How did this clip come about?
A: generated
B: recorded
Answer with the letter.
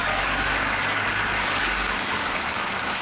A